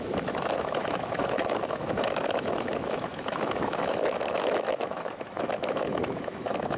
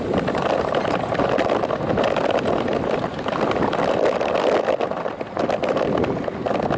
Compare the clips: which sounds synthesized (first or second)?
first